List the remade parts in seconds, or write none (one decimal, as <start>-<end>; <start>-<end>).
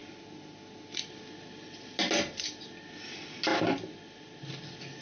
none